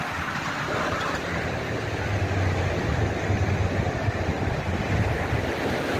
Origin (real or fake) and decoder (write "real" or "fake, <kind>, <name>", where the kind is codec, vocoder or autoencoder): real